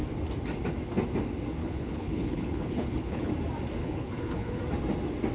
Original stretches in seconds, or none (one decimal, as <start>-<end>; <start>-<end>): 0.0-1.6; 3.3-3.8; 4.6-5.3

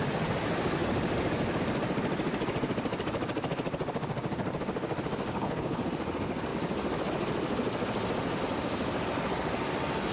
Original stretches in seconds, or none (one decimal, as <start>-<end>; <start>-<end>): 0.0-5.3; 5.9-10.1

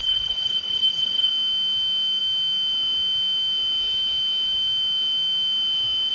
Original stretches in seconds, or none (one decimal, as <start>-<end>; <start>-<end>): 1.3-6.1

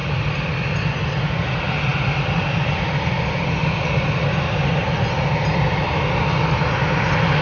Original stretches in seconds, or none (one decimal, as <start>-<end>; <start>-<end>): 0.0-7.4